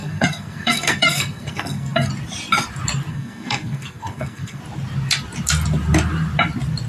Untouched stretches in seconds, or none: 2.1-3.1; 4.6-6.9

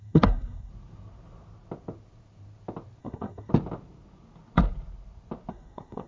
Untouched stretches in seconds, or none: 0.7-3.0; 3.5-5.5